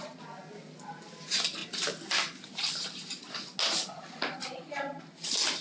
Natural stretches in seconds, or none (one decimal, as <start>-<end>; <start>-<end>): 0.0-5.6